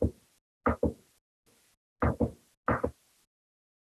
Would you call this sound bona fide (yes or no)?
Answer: yes